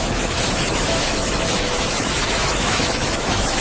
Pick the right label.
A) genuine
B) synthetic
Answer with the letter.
B